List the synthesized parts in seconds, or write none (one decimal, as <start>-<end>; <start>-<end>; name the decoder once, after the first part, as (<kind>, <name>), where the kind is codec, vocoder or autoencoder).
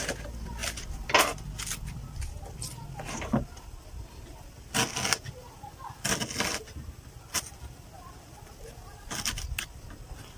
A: none